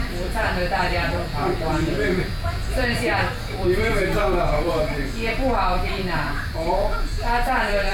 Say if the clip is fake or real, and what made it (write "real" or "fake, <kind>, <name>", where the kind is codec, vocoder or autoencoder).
fake, vocoder, BigVGAN v2